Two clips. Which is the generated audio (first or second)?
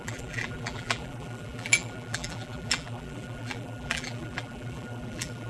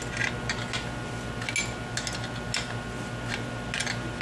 first